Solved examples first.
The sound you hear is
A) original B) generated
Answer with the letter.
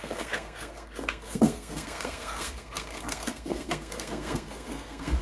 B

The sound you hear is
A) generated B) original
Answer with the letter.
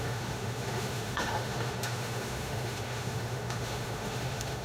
A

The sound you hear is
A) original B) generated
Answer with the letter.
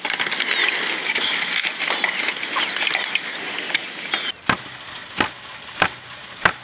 A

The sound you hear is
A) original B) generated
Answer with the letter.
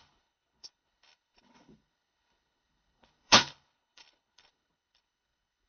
B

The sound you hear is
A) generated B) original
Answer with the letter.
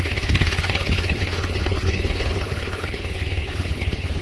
A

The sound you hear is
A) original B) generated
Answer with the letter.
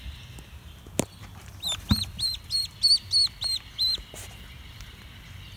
A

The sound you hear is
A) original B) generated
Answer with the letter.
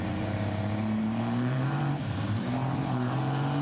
B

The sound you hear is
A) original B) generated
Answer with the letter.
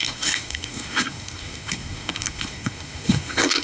B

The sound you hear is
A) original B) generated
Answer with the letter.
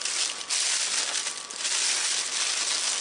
A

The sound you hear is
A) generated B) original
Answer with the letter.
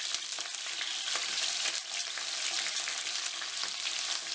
B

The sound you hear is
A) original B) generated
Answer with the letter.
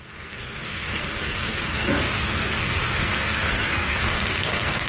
B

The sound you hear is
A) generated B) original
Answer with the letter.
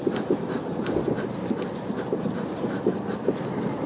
B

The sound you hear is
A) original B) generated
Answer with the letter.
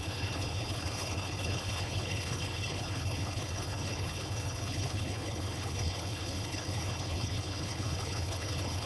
B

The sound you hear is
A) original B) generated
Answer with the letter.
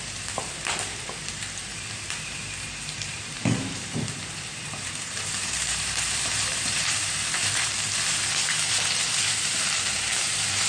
B